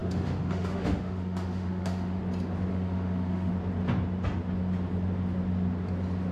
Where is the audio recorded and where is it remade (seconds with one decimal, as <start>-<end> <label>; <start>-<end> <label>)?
0.0-2.2 remade; 2.2-2.7 recorded; 2.7-3.5 remade; 3.5-6.3 recorded